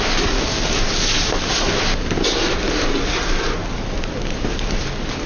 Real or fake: real